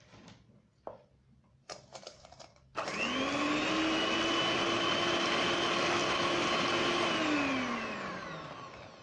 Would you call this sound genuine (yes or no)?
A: yes